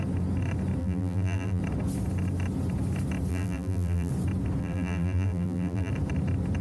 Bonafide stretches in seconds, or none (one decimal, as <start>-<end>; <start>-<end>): 0.0-0.8; 1.6-3.3; 4.1-4.6; 5.9-6.6